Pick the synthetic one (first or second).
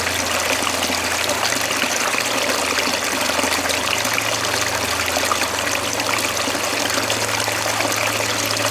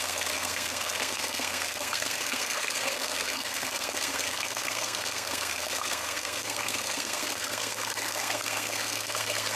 second